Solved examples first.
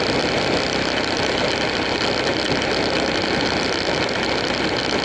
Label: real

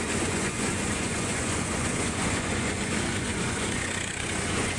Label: fake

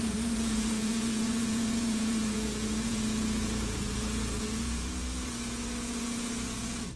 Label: fake